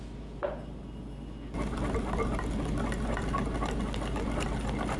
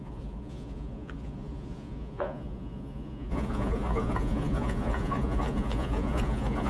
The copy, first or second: second